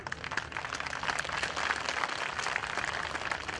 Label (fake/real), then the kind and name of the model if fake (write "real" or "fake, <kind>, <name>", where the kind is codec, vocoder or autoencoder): real